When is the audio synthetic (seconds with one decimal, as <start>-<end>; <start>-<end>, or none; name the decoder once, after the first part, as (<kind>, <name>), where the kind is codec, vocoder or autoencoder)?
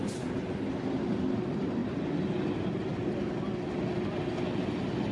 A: none